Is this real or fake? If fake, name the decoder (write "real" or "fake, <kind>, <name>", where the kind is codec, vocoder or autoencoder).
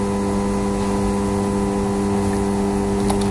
real